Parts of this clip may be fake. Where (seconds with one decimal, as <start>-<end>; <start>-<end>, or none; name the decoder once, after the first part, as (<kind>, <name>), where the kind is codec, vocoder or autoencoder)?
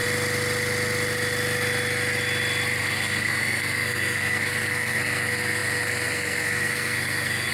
2.8-7.5 (codec, SNAC)